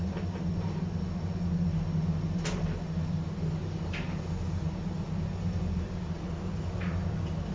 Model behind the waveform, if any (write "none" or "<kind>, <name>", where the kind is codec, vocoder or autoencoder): none